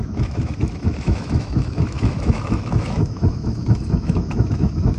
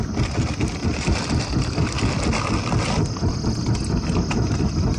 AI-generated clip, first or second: first